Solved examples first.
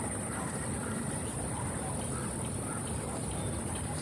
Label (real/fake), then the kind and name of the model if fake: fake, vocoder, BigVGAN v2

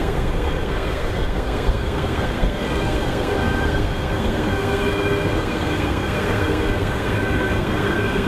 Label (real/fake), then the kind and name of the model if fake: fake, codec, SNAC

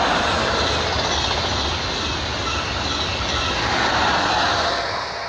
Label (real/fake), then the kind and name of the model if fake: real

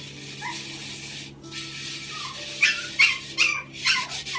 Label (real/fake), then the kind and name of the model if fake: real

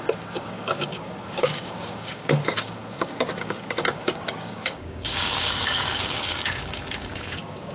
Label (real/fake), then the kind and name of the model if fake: fake, codec, DAC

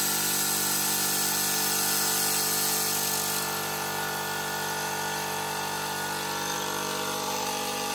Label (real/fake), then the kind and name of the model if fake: real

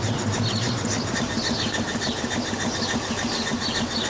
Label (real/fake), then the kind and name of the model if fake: real